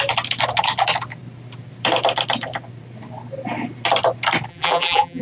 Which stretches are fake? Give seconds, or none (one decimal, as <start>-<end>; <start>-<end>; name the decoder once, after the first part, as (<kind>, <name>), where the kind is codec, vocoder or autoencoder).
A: 4.5-5.2 (vocoder, BigVGAN v2)